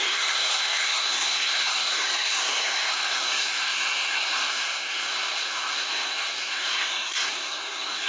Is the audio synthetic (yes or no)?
yes